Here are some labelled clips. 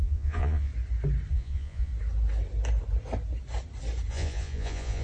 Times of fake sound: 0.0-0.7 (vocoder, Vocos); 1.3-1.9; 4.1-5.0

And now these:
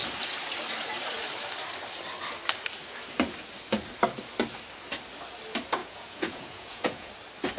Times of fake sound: 5.8-7.1 (vocoder, Vocos)

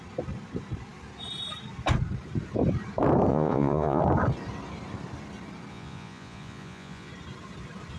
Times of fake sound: 3.3-4.0 (vocoder, Vocos); 5.7-7.1

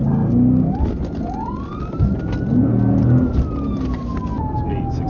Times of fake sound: none

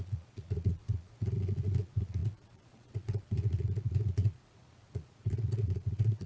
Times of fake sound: 0.0-6.3 (vocoder, Vocos)

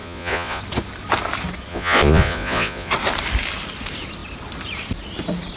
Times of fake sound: 0.0-0.6 (vocoder, Vocos); 1.7-2.9

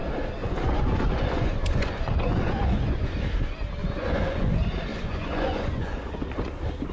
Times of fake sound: 0.4-3.2 (vocoder, Vocos); 3.8-4.5; 4.9-6.1